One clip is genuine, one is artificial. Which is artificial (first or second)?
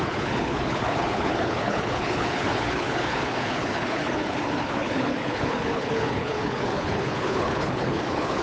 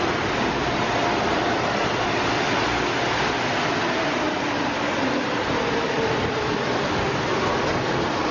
first